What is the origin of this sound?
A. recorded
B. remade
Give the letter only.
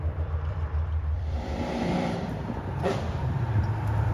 B